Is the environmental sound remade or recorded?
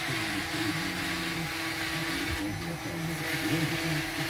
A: recorded